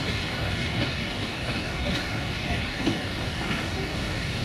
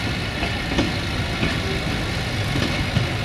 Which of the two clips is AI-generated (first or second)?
first